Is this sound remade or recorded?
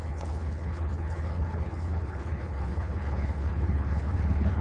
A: remade